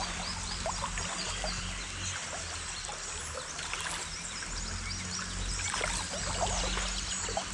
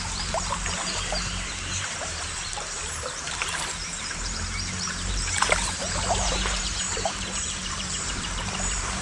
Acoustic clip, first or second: first